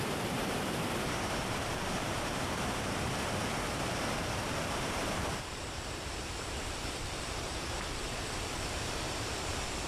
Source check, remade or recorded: remade